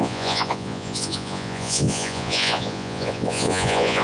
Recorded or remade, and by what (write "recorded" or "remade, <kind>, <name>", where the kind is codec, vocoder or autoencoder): remade, vocoder, Vocos